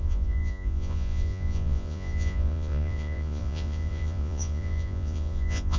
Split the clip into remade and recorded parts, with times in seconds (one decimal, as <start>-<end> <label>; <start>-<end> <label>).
0.0-5.8 remade